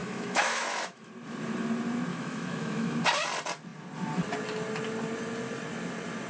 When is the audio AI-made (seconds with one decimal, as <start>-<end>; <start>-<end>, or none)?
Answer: 0.0-1.1; 2.1-3.0